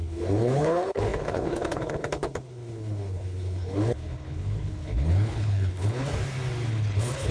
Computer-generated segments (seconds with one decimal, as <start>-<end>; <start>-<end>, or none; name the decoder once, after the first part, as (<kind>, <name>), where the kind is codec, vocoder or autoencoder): 0.0-6.1 (codec, HILCodec); 6.7-7.3